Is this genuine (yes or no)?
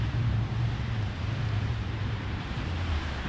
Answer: no